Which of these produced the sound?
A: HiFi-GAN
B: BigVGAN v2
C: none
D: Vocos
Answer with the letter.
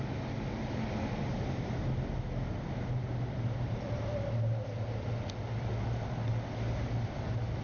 C